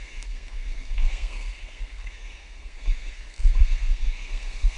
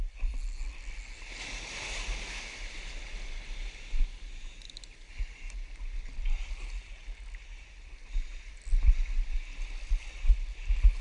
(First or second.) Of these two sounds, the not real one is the first